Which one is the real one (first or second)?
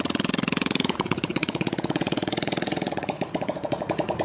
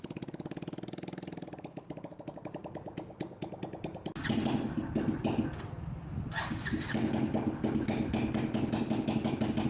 second